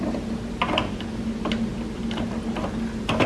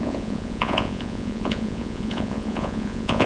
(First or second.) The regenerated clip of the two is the second